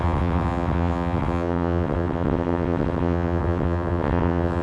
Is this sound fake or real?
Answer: fake